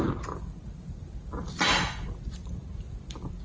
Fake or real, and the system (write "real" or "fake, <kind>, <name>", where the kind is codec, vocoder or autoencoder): real